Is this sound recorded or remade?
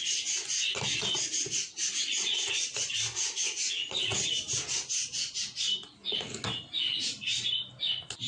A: recorded